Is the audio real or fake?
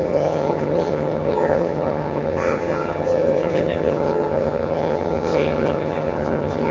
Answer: fake